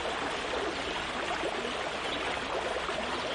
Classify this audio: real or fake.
real